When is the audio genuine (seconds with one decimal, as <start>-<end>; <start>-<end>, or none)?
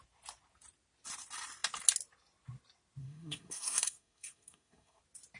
0.0-3.0; 5.0-5.4